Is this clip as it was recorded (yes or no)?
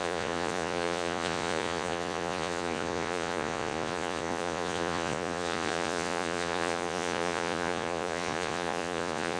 no